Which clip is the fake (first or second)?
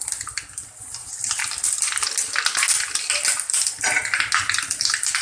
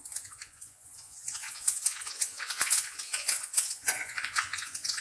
second